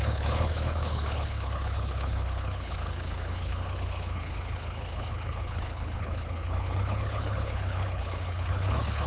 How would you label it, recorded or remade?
remade